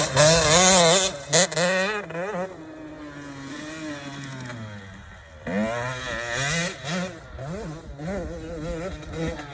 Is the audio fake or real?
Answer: real